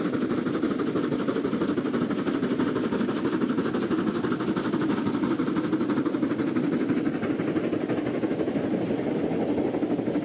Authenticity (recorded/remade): recorded